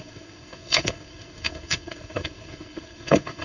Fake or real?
fake